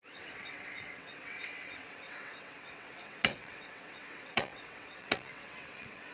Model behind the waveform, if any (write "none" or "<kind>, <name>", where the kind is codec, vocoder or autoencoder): vocoder, WaveNeXt